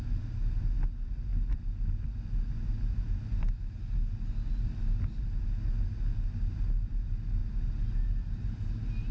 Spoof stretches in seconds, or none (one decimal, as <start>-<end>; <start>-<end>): none